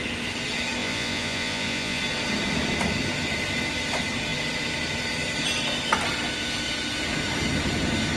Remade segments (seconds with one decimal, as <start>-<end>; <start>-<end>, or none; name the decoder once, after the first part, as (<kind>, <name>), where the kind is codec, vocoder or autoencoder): 0.8-2.0 (vocoder, Vocos)